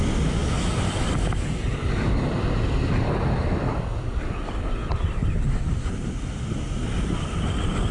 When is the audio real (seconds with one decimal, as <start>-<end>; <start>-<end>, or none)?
0.0-7.9